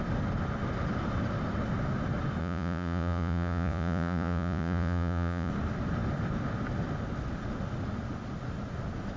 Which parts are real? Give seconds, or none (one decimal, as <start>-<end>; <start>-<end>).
0.0-2.4; 5.5-9.2